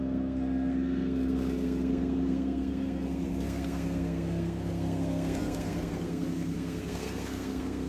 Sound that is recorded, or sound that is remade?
remade